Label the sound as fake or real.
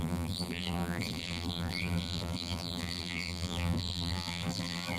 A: fake